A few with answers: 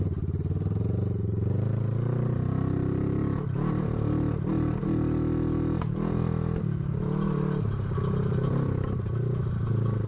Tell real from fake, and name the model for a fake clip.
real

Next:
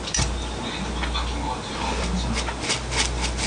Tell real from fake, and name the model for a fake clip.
real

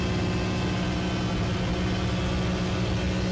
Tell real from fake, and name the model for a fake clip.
real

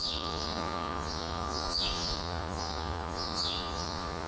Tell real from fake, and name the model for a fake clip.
fake, vocoder, Vocos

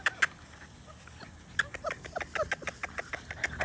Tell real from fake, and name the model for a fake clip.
real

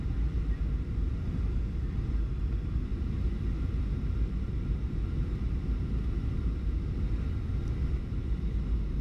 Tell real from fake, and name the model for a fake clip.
fake, vocoder, BigVGAN v2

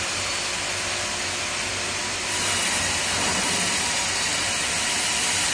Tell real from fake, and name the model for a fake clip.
real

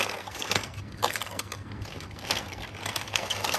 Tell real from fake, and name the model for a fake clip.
fake, codec, SNAC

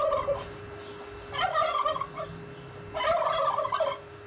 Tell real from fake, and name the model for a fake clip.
real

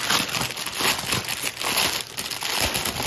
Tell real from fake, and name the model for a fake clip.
real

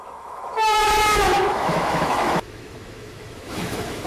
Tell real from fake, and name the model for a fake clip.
fake, autoencoder, DAC-VAE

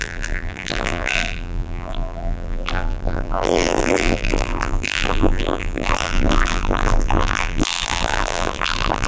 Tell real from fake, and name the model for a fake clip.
fake, vocoder, BigVGAN v2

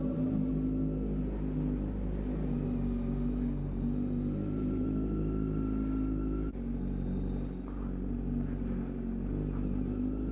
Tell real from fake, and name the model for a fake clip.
real